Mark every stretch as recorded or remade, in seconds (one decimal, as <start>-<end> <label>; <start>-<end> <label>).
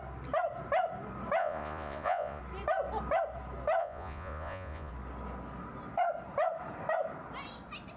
0.0-1.4 recorded; 1.4-2.4 remade; 2.4-3.8 recorded; 3.8-4.9 remade; 4.9-8.0 recorded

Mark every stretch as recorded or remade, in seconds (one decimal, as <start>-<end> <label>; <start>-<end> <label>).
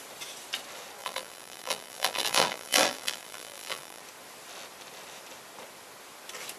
0.0-1.0 recorded; 1.0-4.0 remade; 4.0-6.6 recorded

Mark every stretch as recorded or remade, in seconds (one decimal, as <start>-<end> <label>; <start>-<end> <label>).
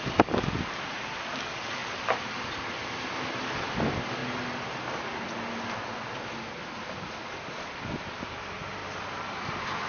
0.0-9.9 recorded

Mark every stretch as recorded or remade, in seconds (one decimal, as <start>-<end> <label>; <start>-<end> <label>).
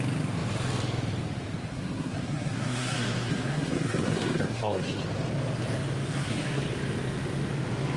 0.0-1.7 recorded; 1.7-5.0 remade; 5.0-6.1 recorded; 6.1-6.6 remade; 6.6-8.0 recorded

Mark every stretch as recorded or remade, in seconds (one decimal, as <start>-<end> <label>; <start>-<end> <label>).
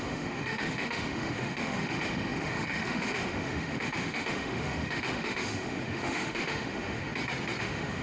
0.0-7.1 remade; 7.1-7.6 recorded; 7.6-8.0 remade